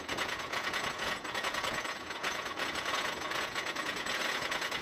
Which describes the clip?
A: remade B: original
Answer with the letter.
A